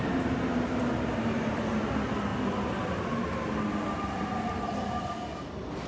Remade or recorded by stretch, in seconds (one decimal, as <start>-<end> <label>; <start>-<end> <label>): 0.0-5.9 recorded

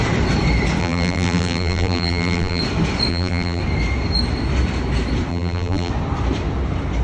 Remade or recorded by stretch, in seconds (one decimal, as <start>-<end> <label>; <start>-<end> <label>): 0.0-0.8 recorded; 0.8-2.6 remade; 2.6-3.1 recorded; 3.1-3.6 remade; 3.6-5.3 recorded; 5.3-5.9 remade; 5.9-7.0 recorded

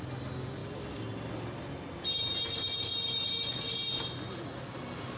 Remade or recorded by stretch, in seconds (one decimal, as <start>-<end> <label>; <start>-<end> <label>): 0.0-5.2 recorded